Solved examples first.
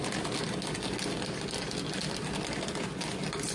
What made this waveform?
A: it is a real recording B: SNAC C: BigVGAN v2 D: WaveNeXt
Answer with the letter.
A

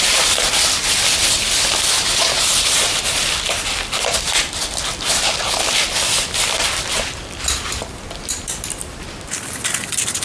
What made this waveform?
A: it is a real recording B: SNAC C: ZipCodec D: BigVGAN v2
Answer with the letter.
D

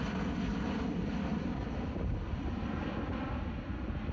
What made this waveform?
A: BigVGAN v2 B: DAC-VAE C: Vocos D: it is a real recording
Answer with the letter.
D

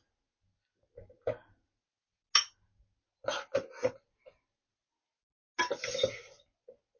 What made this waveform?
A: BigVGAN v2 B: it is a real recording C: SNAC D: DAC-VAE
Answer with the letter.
B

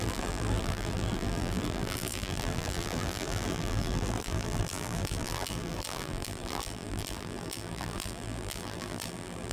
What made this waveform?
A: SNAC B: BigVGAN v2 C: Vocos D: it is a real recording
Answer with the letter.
B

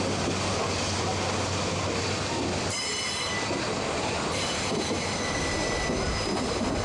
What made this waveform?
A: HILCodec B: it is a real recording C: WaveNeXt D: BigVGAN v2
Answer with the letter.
B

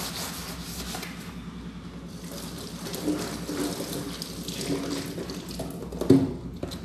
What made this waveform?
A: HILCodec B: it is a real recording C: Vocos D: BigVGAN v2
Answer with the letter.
B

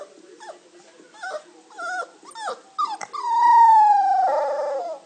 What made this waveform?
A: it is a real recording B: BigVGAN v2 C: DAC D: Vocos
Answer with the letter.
A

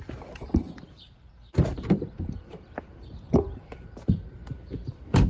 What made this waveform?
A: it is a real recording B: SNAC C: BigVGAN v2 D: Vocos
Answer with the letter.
C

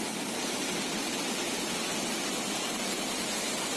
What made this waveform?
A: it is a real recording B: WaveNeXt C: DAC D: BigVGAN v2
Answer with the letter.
A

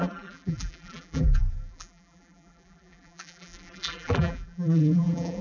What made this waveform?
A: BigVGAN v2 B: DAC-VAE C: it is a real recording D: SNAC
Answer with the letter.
A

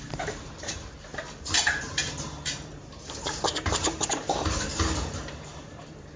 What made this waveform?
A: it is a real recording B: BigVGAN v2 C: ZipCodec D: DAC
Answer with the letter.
B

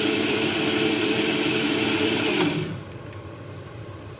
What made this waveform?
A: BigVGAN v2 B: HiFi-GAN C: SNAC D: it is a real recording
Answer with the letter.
A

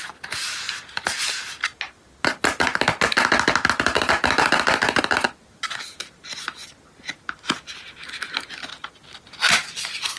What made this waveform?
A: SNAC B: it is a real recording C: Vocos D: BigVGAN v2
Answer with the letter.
B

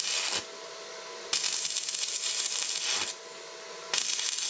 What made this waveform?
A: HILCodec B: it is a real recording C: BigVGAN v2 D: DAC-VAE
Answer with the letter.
B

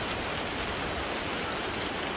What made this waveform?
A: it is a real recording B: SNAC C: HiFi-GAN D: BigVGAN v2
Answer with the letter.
A